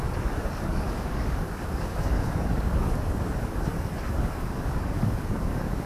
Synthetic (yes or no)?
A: yes